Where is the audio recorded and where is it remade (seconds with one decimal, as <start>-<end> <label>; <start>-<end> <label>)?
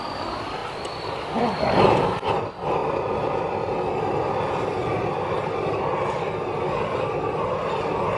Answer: 0.0-8.2 recorded